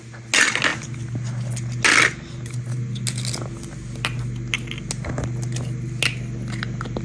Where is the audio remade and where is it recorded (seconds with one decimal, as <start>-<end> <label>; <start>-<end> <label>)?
0.0-7.0 recorded